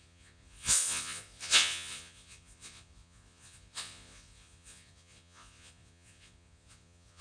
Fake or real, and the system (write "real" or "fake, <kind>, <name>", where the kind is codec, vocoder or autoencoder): fake, vocoder, Vocos